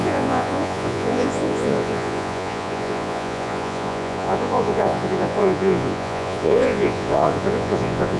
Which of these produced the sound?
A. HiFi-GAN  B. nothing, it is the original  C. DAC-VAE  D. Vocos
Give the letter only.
D